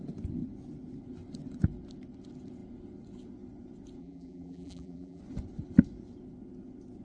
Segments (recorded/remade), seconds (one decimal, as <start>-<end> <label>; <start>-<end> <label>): 0.0-4.0 recorded; 4.0-5.2 remade; 5.2-7.0 recorded

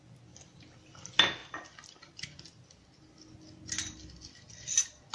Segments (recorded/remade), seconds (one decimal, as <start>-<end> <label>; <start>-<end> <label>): 0.0-5.1 recorded

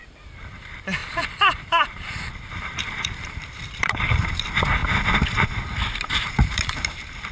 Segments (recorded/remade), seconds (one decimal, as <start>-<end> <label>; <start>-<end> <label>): 0.0-4.8 remade; 4.8-6.1 recorded; 6.1-7.3 remade

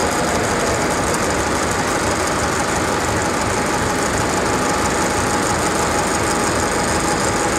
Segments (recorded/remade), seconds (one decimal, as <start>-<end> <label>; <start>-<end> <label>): 0.0-7.6 recorded

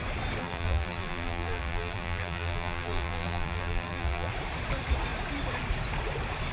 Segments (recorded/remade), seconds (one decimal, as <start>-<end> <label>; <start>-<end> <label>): 0.0-0.4 recorded; 0.4-4.3 remade; 4.3-6.5 recorded